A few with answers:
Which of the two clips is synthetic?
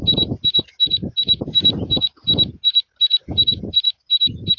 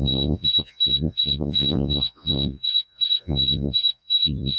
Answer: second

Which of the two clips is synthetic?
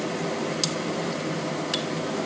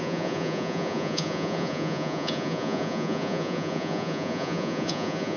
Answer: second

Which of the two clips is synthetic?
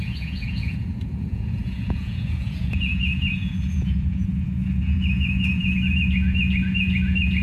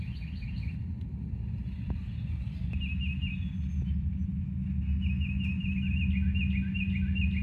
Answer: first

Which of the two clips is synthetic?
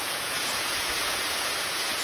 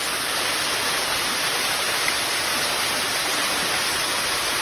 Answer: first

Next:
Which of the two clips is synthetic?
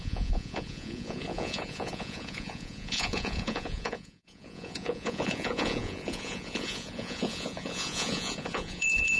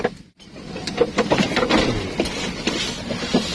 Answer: first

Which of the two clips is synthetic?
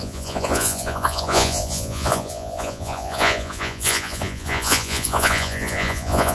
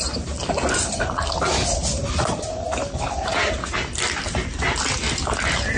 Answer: first